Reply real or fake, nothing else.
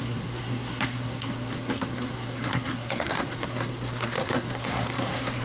fake